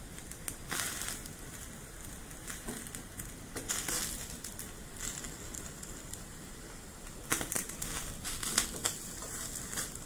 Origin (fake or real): fake